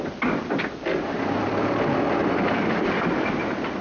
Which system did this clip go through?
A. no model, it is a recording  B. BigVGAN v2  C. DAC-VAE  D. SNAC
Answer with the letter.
A